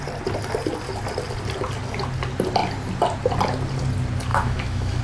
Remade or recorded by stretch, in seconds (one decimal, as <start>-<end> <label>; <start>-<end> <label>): 0.0-4.3 recorded; 4.3-5.0 remade